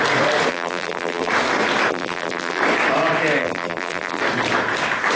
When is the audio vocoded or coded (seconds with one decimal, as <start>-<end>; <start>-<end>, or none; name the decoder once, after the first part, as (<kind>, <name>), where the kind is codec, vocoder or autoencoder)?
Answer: 0.5-1.3 (vocoder, BigVGAN v2); 1.9-2.6; 3.4-4.2